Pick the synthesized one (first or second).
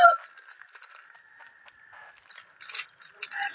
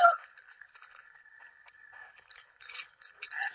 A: second